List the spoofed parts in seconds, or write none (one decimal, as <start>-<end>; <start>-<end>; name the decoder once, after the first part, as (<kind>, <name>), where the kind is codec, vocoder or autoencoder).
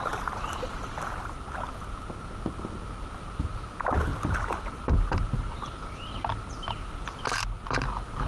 none